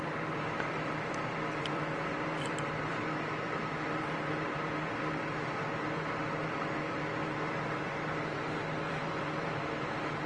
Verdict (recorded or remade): remade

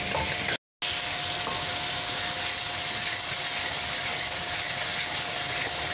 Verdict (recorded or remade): recorded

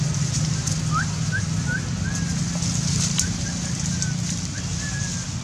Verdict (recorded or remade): recorded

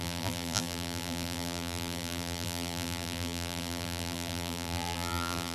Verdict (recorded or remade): remade